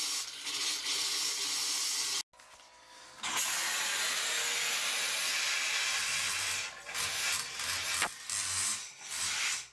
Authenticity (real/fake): real